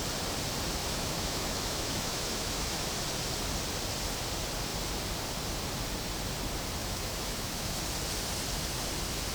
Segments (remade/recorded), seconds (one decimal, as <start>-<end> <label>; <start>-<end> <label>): 0.0-0.8 recorded; 0.8-2.9 remade; 2.9-6.8 recorded; 6.8-7.8 remade; 7.8-9.3 recorded